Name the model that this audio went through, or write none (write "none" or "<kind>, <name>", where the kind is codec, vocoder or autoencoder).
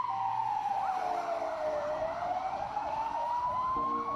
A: none